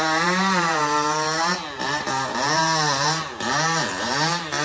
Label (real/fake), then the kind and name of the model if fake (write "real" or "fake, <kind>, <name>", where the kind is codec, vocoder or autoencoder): fake, vocoder, BigVGAN v2